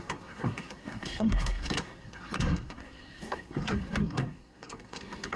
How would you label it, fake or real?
fake